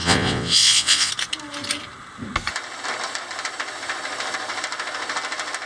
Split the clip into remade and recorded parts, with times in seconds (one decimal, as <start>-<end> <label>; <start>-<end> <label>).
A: 0.0-1.1 remade; 1.1-5.7 recorded